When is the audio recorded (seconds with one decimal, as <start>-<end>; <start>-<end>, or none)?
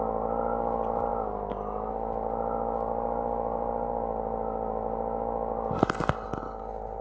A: 0.0-7.0